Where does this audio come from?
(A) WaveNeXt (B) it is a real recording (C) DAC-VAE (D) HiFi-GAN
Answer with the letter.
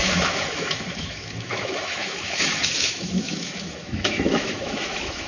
C